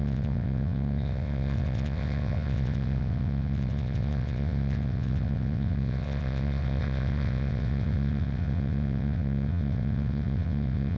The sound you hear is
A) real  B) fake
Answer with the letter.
B